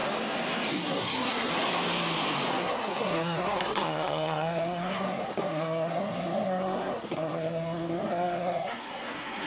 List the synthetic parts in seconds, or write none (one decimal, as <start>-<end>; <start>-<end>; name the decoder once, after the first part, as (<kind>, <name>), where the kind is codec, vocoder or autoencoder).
0.7-1.5 (codec, SNAC); 2.5-9.5